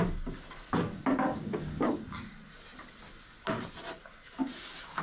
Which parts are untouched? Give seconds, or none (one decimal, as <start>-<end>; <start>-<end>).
0.0-1.3; 1.9-5.0